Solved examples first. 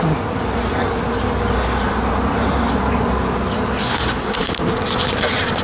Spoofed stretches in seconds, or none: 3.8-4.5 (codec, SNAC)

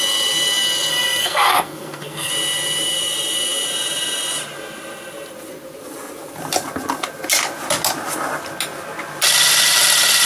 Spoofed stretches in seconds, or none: 0.9-2.3 (codec, SNAC)